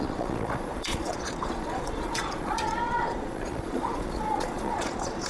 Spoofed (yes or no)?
yes